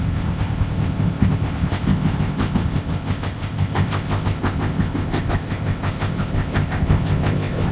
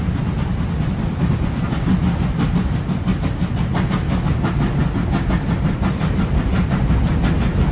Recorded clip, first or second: second